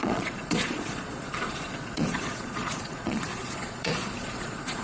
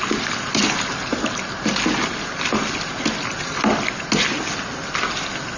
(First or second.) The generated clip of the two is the first